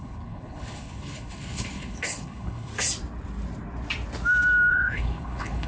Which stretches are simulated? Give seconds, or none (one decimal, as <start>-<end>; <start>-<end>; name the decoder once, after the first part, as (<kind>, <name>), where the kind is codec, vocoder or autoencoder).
0.0-2.7 (codec, HILCodec); 4.7-5.7

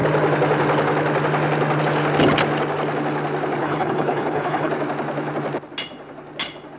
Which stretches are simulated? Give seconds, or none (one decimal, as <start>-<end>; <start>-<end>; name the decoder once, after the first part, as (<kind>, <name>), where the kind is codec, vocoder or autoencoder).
3.6-4.7 (codec, HILCodec)

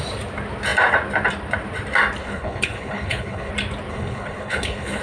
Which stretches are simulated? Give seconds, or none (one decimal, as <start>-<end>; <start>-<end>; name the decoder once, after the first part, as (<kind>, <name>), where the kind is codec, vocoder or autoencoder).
2.2-3.5 (codec, HILCodec); 3.9-5.0

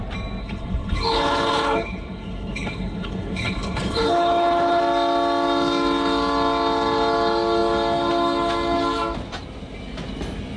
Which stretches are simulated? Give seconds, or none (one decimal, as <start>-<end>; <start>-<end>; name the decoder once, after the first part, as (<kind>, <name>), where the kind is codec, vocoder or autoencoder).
0.4-4.8 (codec, HILCodec)

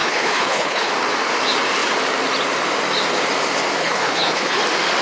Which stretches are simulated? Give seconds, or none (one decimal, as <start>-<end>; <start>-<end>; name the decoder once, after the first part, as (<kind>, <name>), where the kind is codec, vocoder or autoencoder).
0.0-0.9 (codec, HILCodec); 3.8-4.6

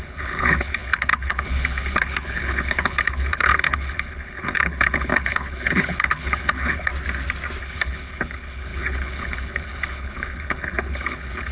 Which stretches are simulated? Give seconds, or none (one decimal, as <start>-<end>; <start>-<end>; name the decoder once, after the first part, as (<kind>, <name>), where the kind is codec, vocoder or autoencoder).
0.0-6.9 (codec, HILCodec); 7.6-11.5

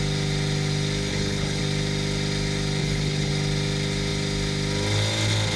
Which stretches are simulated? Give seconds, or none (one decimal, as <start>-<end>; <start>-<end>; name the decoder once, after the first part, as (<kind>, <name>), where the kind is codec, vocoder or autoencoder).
1.1-1.6 (codec, HILCodec); 2.8-3.3

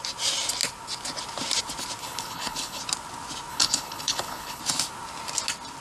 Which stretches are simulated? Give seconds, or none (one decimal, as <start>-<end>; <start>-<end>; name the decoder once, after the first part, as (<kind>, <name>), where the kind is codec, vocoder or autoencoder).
2.0-2.8 (codec, HILCodec); 3.5-4.6